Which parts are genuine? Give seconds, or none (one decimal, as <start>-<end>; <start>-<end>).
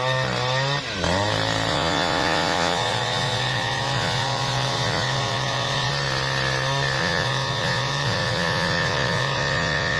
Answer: 0.0-1.7; 5.9-7.0